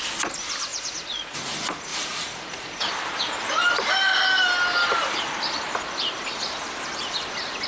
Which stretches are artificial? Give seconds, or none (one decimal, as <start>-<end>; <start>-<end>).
0.7-1.4; 1.9-2.9